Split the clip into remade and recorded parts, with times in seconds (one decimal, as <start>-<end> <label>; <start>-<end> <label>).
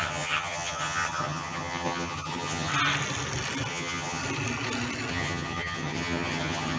0.0-2.7 remade; 2.7-3.7 recorded; 3.7-4.2 remade; 4.2-5.1 recorded; 5.1-6.8 remade